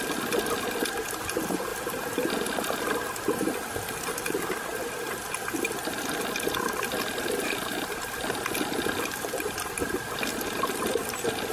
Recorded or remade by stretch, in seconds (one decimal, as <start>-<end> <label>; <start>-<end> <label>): 0.0-11.5 recorded